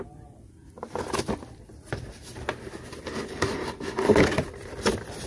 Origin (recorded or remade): recorded